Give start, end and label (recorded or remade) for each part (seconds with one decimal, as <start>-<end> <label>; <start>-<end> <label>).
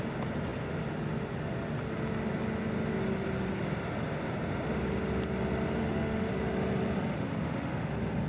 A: 0.0-5.8 recorded; 5.8-6.3 remade; 6.3-7.1 recorded; 7.1-7.9 remade; 7.9-8.3 recorded